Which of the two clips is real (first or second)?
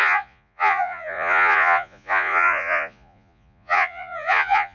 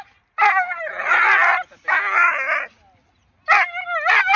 second